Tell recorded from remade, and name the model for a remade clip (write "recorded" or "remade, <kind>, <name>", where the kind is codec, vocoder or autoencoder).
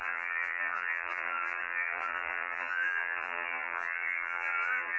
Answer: remade, vocoder, BigVGAN v2